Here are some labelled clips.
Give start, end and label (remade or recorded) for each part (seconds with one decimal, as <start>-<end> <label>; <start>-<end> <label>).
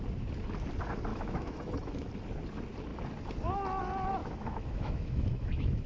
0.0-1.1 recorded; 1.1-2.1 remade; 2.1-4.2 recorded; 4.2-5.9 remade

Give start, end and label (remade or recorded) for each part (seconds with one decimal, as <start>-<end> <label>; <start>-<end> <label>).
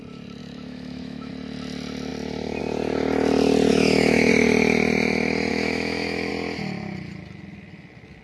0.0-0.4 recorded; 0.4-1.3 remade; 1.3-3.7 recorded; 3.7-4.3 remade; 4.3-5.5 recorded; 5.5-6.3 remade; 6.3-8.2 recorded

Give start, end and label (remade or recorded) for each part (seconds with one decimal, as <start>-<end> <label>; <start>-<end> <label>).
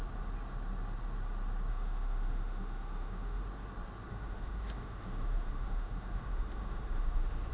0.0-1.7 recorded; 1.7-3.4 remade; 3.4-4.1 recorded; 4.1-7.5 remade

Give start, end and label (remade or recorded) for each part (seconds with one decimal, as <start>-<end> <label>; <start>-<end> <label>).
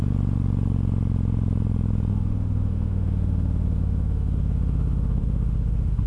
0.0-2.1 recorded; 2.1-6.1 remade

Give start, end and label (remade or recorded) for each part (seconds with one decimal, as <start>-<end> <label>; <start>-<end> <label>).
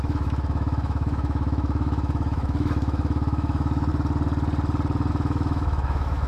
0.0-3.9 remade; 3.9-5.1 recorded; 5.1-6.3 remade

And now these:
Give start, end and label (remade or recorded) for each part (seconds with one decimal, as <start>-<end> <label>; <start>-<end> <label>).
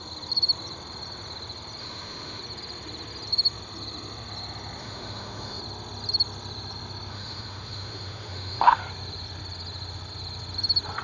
0.0-1.8 recorded; 1.8-2.4 remade; 2.4-4.8 recorded; 4.8-5.6 remade; 5.6-7.1 recorded; 7.1-8.8 remade; 8.8-11.0 recorded